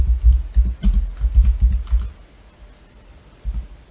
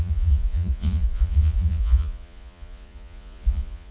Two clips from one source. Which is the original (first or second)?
first